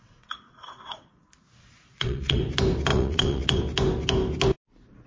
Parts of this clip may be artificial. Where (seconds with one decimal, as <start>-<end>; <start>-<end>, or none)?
0.0-1.2; 1.9-2.4; 2.9-3.6